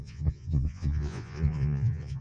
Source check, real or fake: fake